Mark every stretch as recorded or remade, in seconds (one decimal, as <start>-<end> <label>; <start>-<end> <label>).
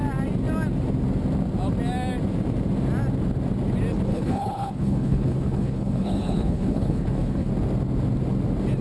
0.0-4.1 recorded; 4.1-7.5 remade; 7.5-8.8 recorded